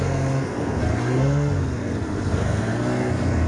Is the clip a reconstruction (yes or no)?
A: yes